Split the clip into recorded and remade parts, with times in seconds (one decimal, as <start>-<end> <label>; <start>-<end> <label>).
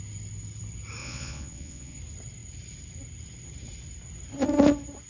0.0-1.0 recorded; 1.0-2.0 remade; 2.0-5.1 recorded